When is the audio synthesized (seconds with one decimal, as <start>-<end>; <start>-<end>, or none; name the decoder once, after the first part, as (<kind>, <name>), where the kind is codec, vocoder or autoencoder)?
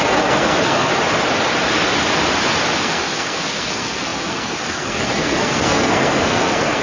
0.0-0.9 (codec, SNAC); 2.8-6.8